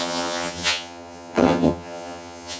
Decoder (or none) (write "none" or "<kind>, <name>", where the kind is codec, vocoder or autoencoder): vocoder, HiFi-GAN